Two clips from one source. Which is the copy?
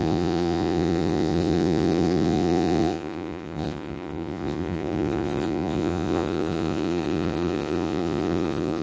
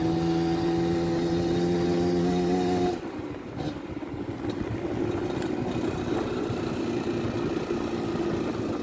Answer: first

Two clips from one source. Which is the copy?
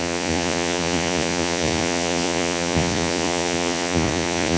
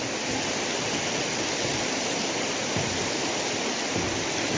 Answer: first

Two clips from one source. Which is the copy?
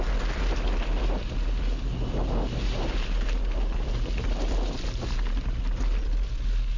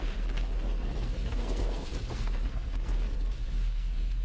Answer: second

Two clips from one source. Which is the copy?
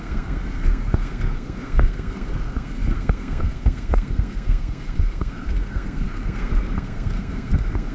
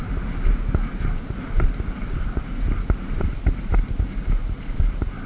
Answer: first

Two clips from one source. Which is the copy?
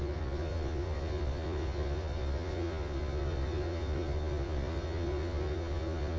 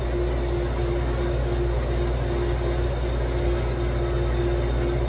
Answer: first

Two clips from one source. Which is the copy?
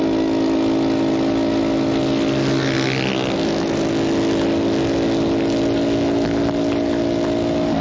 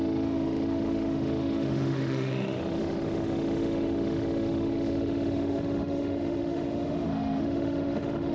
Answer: second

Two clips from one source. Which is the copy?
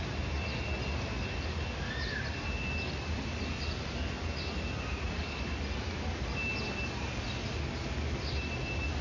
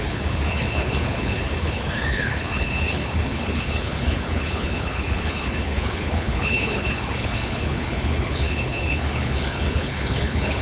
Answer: second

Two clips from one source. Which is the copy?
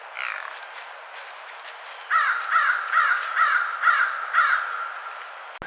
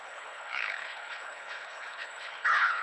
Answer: second